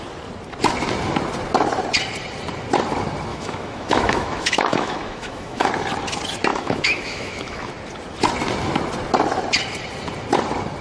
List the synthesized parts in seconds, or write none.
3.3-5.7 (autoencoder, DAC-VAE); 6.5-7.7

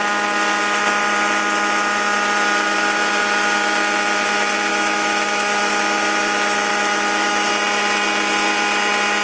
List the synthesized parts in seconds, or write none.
4.7-5.7 (autoencoder, DAC-VAE); 6.7-7.5